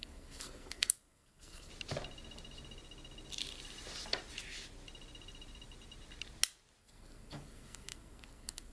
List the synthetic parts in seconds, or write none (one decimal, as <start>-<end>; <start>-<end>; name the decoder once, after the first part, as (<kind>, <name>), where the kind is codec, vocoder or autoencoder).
0.0-1.7 (codec, SNAC); 6.8-8.7